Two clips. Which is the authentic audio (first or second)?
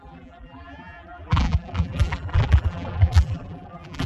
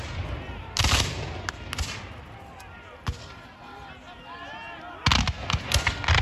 second